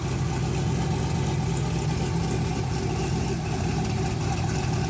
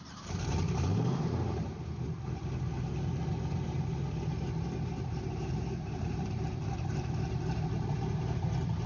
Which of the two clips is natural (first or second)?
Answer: first